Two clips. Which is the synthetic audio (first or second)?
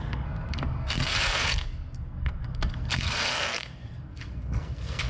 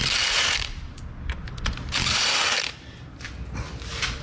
first